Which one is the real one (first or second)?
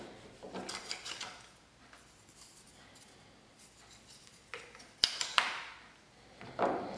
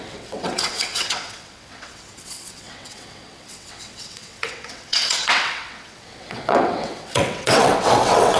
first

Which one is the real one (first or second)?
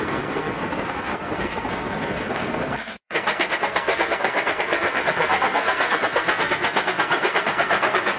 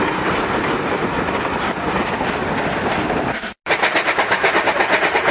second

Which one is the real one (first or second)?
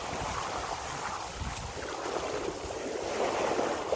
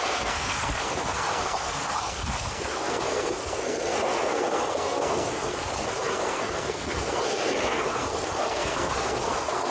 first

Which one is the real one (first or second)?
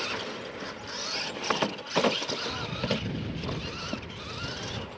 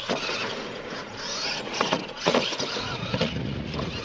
first